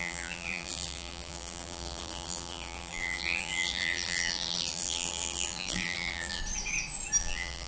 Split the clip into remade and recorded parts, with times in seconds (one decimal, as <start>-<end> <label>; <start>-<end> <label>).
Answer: 0.0-6.4 remade; 6.4-7.2 recorded; 7.2-7.7 remade